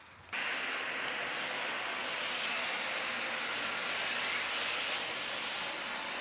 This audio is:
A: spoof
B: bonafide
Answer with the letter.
B